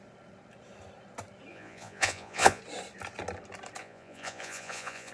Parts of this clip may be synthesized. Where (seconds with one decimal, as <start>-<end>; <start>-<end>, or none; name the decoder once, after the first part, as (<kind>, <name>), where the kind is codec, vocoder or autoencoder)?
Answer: 1.5-2.6 (vocoder, Vocos); 3.8-5.1